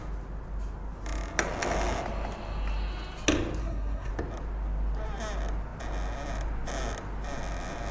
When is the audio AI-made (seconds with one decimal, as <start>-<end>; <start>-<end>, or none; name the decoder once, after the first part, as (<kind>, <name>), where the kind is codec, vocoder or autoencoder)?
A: 3.6-4.1 (codec, SNAC)